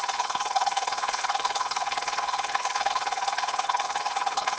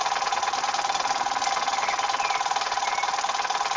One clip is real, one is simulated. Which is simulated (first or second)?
first